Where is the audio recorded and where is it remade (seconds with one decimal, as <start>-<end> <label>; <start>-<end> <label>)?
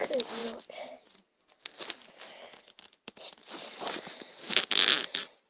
0.0-3.4 recorded; 3.4-5.5 remade